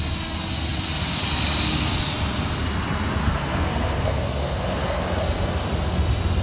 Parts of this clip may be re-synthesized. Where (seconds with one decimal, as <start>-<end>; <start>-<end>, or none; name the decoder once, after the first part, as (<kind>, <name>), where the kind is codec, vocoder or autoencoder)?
3.2-5.0 (codec, SNAC)